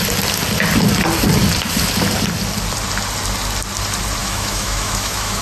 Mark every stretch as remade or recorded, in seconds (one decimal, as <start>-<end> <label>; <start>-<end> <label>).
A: 0.0-4.2 recorded; 4.2-5.4 remade